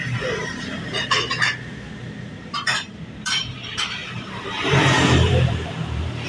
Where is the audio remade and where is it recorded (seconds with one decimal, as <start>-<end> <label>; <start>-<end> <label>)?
0.0-6.3 remade